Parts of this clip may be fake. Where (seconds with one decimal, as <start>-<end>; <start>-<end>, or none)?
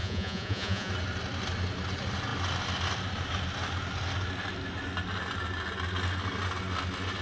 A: 0.0-0.9